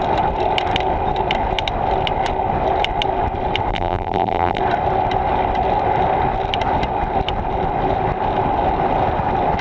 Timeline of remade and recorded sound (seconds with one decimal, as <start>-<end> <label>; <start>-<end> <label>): 0.0-3.7 recorded; 3.7-4.6 remade; 4.6-9.6 recorded